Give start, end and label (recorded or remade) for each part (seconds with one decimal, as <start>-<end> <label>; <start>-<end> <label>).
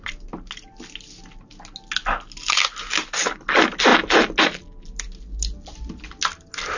0.0-6.8 recorded